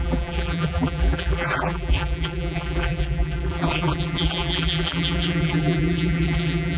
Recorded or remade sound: remade